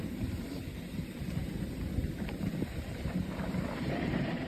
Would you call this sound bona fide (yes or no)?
no